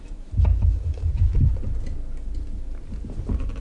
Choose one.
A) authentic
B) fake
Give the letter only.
A